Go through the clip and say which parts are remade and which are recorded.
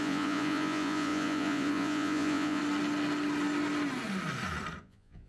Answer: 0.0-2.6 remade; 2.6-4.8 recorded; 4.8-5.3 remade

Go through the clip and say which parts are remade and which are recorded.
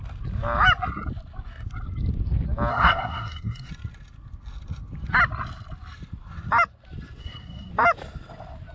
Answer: 0.0-2.7 recorded; 2.7-3.7 remade; 3.7-7.2 recorded; 7.2-7.7 remade; 7.7-8.7 recorded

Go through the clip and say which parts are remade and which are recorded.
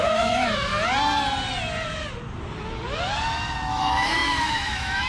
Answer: 0.0-0.7 remade; 0.7-3.7 recorded; 3.7-5.1 remade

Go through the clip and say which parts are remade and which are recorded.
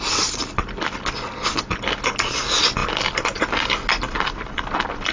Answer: 0.0-2.8 recorded; 2.8-3.4 remade; 3.4-5.1 recorded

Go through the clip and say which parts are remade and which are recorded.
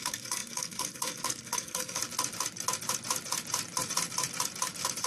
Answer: 0.0-2.0 remade; 2.0-5.1 recorded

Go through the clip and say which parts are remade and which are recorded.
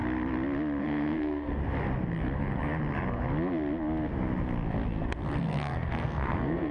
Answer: 0.0-0.8 recorded; 0.8-1.6 remade; 1.6-5.4 recorded; 5.4-6.7 remade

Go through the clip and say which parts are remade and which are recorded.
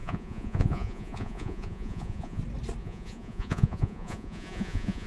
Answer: 0.0-2.4 remade; 2.4-2.8 recorded; 2.8-5.1 remade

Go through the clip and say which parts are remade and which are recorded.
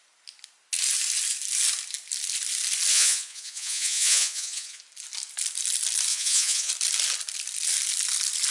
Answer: 0.0-2.9 recorded; 2.9-4.8 remade; 4.8-6.1 recorded; 6.1-6.7 remade; 6.7-8.5 recorded